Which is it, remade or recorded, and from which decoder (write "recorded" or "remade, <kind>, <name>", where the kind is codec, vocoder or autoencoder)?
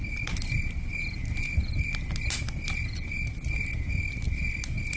recorded